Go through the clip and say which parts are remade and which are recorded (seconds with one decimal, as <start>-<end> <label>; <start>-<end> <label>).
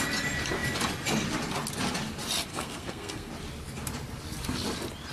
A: 0.0-2.5 recorded; 2.5-3.3 remade; 3.3-5.1 recorded